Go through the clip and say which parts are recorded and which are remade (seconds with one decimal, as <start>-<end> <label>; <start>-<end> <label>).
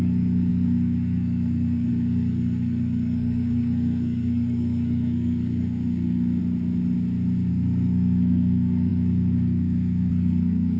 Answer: 0.0-6.4 remade; 6.4-7.5 recorded; 7.5-10.8 remade